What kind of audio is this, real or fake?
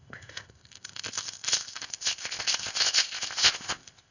fake